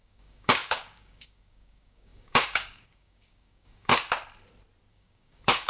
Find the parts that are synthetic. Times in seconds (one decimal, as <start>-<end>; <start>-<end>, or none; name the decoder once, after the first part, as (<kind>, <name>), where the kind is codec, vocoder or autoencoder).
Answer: 0.0-3.9 (codec, DAC); 4.9-5.7